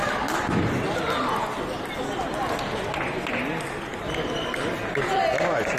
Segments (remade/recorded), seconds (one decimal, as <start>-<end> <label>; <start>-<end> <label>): 0.0-5.8 recorded